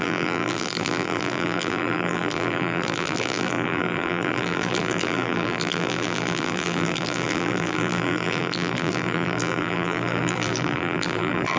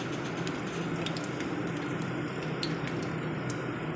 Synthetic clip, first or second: first